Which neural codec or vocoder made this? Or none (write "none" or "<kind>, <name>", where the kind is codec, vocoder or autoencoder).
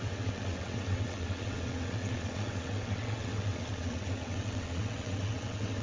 vocoder, WaveNeXt